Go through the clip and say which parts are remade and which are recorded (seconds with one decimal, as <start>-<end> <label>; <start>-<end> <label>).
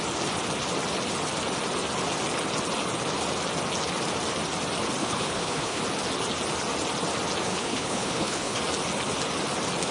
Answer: 0.0-5.0 recorded; 5.0-5.8 remade; 5.8-7.5 recorded; 7.5-8.6 remade; 8.6-9.9 recorded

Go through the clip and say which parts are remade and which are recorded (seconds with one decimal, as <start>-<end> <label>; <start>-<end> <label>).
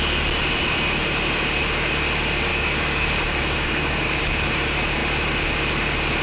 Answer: 0.0-2.5 recorded; 2.5-4.2 remade; 4.2-6.2 recorded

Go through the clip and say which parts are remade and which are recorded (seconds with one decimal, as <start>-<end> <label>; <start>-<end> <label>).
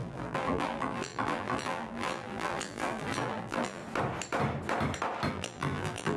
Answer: 0.0-3.8 remade; 3.8-5.3 recorded; 5.3-6.2 remade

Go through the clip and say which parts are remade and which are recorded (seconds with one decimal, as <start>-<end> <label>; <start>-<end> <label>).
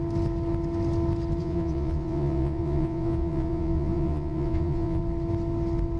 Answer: 0.0-1.4 recorded; 1.4-5.0 remade; 5.0-6.0 recorded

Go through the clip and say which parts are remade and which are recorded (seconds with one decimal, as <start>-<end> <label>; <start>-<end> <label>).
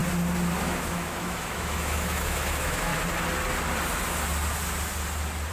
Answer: 0.0-0.6 recorded; 0.6-2.9 remade; 2.9-5.5 recorded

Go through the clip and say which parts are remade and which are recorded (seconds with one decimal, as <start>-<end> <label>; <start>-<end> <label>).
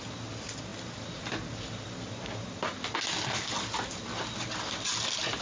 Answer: 0.0-5.4 recorded